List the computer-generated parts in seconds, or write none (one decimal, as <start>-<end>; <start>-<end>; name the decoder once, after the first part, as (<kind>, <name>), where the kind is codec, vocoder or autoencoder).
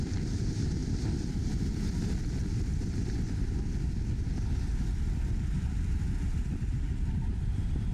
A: none